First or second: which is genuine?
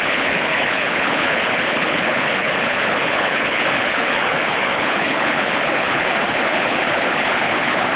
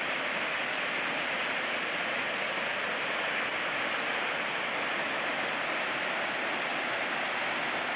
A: second